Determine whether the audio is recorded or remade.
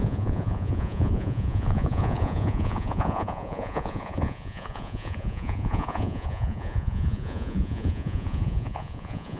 remade